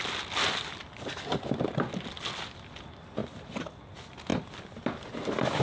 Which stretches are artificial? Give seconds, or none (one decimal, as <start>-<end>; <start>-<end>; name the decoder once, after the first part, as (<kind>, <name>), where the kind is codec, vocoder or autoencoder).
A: none